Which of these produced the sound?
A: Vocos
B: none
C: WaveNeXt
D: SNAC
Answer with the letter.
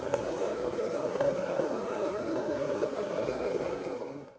D